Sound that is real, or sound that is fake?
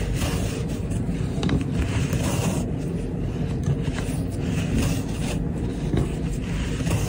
fake